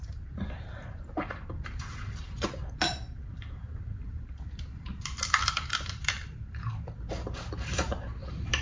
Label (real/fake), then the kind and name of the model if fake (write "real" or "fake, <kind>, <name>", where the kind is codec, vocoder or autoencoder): fake, vocoder, BigVGAN v2